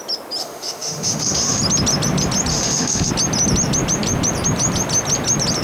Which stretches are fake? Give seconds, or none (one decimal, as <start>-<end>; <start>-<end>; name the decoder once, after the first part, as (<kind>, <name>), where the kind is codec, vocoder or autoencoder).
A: 0.4-1.6 (autoencoder, DAC-VAE); 2.5-3.1